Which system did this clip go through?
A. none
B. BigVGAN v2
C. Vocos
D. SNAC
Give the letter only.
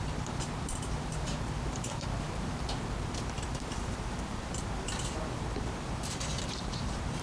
B